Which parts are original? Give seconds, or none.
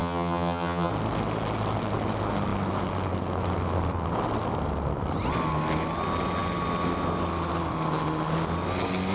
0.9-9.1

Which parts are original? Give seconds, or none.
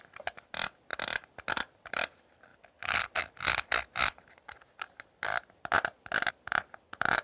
0.9-1.5; 2.5-4.0; 5.3-6.3